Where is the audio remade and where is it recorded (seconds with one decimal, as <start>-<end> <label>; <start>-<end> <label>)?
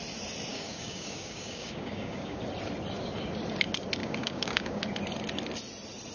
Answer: 0.0-0.5 recorded; 0.5-2.4 remade; 2.4-4.0 recorded; 4.0-4.8 remade; 4.8-6.1 recorded